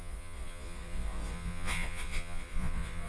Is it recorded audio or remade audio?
remade